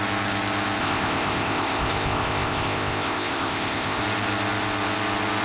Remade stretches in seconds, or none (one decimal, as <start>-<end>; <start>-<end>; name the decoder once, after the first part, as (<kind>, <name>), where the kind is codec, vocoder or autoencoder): 0.8-4.0 (codec, ZipCodec)